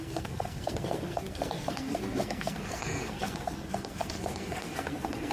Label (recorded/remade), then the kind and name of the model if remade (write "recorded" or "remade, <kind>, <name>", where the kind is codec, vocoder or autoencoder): remade, codec, SNAC